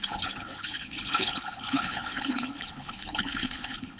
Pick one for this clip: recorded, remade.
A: remade